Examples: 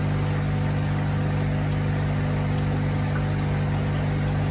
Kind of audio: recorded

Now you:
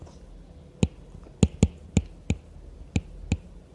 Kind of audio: recorded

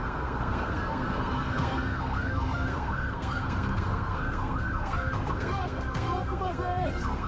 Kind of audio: remade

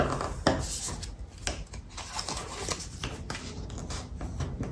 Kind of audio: recorded